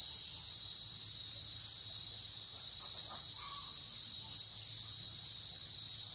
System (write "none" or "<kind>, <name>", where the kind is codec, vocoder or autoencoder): none